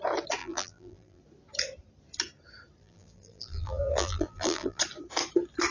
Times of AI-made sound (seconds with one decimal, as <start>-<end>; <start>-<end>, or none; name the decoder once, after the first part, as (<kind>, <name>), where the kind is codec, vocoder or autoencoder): 0.4-1.2 (vocoder, BigVGAN v2); 2.8-4.8